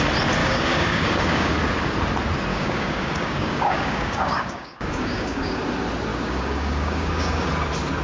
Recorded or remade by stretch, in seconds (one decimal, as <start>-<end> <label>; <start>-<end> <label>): 0.0-0.4 recorded; 0.4-1.5 remade; 1.5-2.5 recorded; 2.5-5.6 remade; 5.6-6.1 recorded; 6.1-7.5 remade; 7.5-8.0 recorded